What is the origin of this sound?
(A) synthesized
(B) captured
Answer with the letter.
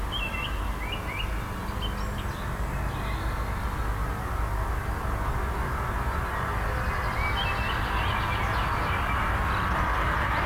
B